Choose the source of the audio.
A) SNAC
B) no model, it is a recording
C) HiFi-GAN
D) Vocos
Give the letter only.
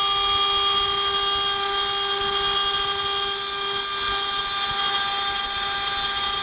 B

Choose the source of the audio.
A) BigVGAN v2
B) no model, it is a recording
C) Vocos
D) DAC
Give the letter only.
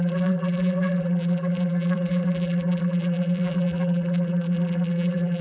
A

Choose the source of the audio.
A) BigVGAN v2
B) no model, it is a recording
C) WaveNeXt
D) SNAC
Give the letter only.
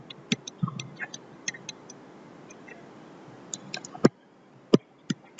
B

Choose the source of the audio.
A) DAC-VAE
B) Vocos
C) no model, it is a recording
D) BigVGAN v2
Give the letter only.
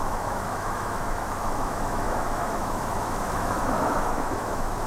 A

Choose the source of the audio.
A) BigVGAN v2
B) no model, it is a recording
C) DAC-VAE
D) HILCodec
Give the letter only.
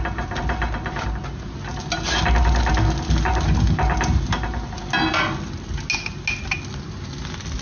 B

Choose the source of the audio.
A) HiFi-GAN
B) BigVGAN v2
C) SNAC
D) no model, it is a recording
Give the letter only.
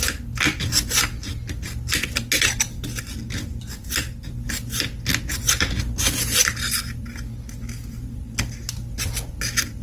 D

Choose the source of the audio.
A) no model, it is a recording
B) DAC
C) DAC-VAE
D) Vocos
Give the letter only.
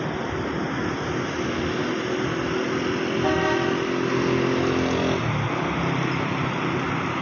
A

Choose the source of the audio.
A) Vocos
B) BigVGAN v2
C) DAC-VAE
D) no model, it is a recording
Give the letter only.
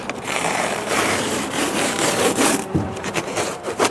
B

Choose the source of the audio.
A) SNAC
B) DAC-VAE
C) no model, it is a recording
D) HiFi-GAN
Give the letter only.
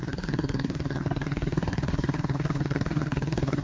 A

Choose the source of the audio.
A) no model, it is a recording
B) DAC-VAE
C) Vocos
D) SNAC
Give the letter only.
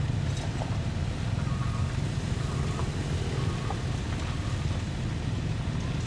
A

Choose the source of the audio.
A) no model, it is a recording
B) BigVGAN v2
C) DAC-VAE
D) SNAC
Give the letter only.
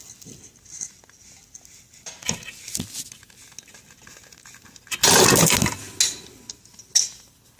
A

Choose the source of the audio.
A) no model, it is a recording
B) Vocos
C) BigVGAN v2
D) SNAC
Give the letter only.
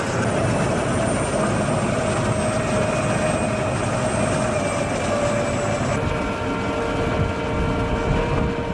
A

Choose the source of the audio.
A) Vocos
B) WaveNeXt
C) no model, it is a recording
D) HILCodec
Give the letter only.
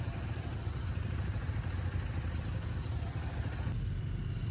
C